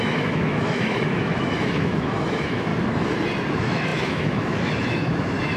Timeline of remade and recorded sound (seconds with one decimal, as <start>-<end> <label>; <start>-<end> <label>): 0.0-2.7 remade; 2.7-3.5 recorded; 3.5-5.6 remade